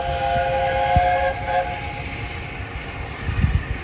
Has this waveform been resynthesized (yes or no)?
no